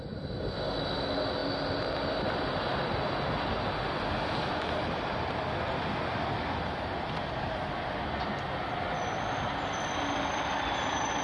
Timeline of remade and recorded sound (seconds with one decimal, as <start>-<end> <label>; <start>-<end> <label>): 0.0-11.2 recorded